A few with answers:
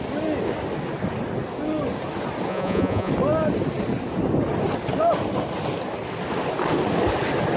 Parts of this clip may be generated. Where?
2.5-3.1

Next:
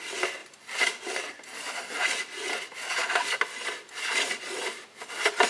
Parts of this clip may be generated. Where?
none

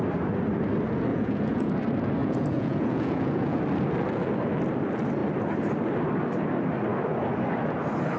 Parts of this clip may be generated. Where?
1.1-1.7; 2.2-3.6

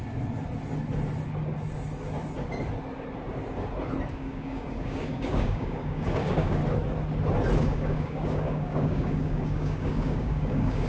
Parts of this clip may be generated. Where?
4.1-6.6; 7.6-10.9

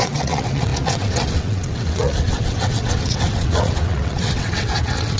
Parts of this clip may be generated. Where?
0.0-5.2

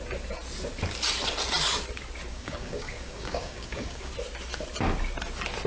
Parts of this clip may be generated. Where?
2.3-4.1

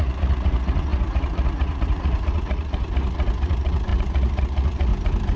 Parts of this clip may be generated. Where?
0.0-4.9

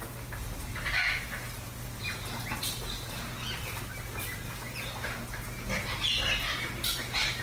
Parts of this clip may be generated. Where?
0.6-1.2